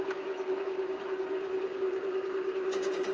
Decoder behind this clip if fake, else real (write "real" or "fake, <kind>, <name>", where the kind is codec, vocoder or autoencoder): fake, codec, DAC